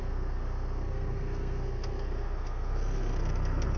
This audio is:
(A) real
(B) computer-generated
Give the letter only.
B